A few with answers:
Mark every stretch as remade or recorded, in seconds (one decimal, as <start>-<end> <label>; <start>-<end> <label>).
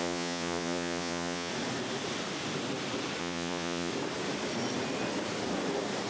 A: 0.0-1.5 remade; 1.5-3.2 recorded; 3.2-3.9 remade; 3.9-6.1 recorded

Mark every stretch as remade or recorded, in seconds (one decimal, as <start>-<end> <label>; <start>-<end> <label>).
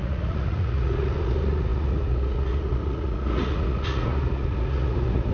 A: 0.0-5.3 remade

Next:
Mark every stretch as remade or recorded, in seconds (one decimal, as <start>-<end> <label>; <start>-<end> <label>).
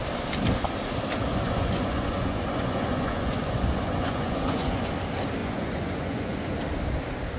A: 0.0-1.3 recorded; 1.3-4.9 remade; 4.9-5.4 recorded; 5.4-6.6 remade; 6.6-7.4 recorded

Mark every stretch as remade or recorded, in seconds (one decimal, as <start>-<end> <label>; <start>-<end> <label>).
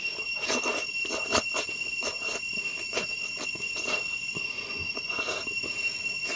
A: 0.0-4.2 recorded; 4.2-5.2 remade; 5.2-6.4 recorded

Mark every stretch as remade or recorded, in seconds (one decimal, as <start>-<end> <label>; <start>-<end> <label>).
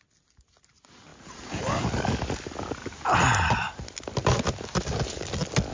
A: 0.0-5.7 recorded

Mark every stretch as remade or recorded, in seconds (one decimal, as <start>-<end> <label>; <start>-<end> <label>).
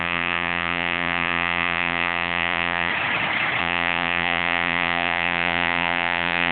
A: 0.0-2.9 remade; 2.9-3.6 recorded; 3.6-6.5 remade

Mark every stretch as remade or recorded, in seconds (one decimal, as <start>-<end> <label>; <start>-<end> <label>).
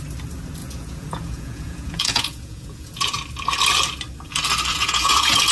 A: 0.0-0.6 recorded; 0.6-3.0 remade; 3.0-4.7 recorded; 4.7-5.5 remade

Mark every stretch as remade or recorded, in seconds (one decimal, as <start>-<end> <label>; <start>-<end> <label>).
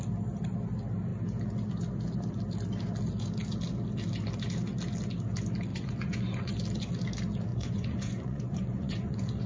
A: 0.0-5.7 recorded; 5.7-6.5 remade; 6.5-7.5 recorded; 7.5-9.5 remade